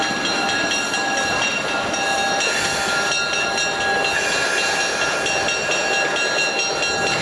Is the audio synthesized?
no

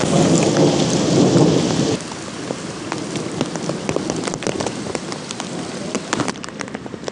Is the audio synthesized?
no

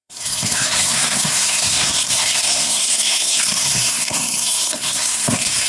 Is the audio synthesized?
yes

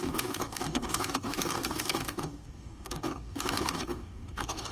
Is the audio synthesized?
yes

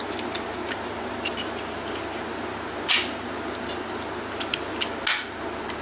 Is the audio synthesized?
no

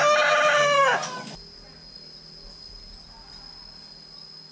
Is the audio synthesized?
no